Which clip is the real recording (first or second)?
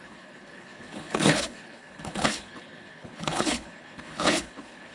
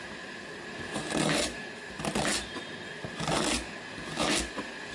second